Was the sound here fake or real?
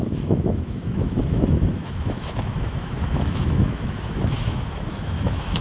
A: fake